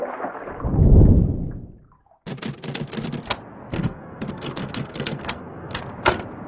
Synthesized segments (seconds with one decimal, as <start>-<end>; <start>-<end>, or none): 3.7-5.8